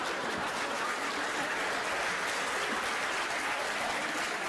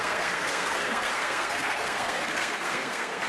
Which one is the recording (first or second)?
first